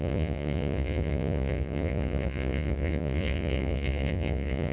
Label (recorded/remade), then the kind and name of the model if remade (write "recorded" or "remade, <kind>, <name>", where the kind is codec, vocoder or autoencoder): remade, vocoder, Vocos